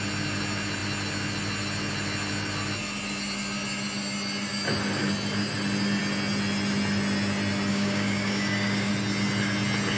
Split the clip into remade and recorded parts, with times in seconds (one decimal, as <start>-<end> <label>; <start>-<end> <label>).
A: 0.0-7.7 recorded; 7.7-8.9 remade; 8.9-10.0 recorded